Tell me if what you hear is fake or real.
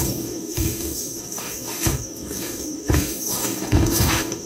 fake